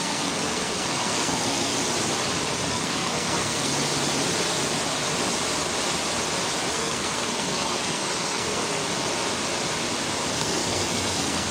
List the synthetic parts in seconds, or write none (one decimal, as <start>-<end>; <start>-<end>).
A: 0.0-1.7; 2.7-3.7; 6.7-8.8; 10.3-11.5